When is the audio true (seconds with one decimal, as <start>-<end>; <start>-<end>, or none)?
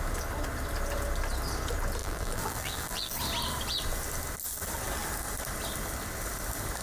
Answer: 0.0-2.0; 3.1-6.8